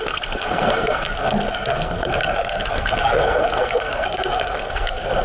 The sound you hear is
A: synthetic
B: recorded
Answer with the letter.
A